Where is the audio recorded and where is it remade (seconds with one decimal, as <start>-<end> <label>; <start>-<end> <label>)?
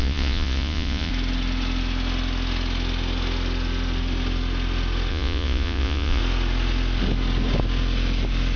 0.0-1.1 remade; 1.1-5.1 recorded; 5.1-6.2 remade; 6.2-8.6 recorded